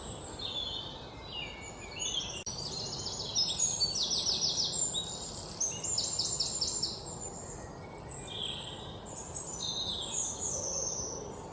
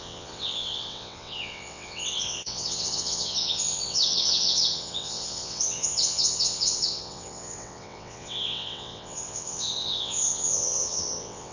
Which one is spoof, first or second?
second